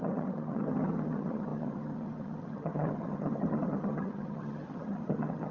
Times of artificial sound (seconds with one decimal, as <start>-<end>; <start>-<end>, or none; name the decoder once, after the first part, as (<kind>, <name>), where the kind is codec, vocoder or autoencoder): 0.0-5.5 (vocoder, HiFi-GAN)